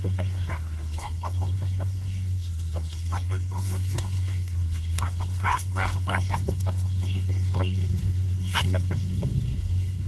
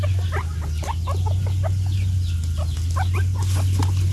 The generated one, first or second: first